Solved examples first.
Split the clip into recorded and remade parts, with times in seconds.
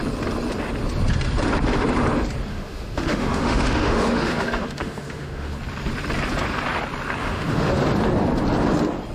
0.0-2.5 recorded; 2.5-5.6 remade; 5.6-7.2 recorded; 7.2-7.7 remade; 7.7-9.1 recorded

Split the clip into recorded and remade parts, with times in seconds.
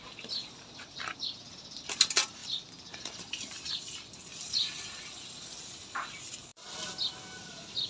0.0-7.9 recorded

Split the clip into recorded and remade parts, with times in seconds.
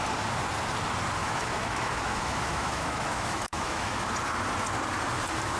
0.0-1.2 recorded; 1.2-4.1 remade; 4.1-5.6 recorded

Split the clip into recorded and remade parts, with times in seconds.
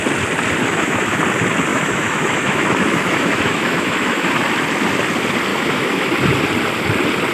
0.0-0.6 recorded; 0.6-1.2 remade; 1.2-1.7 recorded; 1.7-4.3 remade; 4.3-5.5 recorded; 5.5-6.1 remade; 6.1-7.3 recorded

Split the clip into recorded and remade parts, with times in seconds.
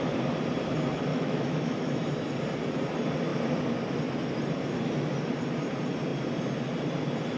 0.0-1.1 recorded; 1.1-2.0 remade; 2.0-7.4 recorded